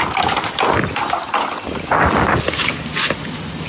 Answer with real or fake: real